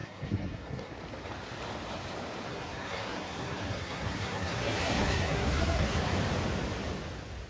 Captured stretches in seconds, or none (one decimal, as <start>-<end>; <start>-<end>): 0.9-2.5; 6.1-7.5